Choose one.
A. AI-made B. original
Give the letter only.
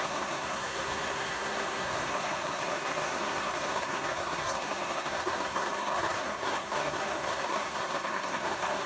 A